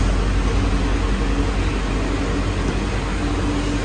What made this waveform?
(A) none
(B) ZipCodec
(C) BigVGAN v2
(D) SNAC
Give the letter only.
A